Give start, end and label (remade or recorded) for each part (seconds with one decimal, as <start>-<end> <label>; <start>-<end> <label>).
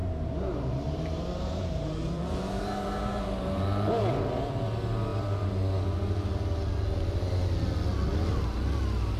0.0-3.9 remade; 3.9-9.2 recorded